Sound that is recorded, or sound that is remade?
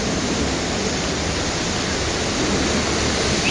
recorded